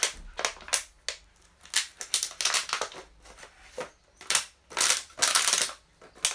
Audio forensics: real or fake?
real